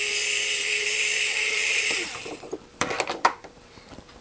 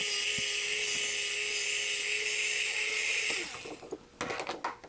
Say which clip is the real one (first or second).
second